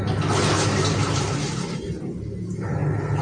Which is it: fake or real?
real